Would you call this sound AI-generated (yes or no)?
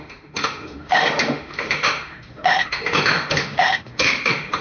yes